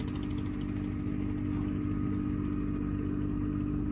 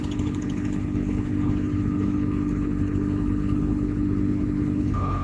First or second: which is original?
first